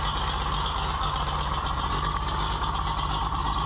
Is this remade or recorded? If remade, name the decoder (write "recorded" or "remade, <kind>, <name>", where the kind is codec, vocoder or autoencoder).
recorded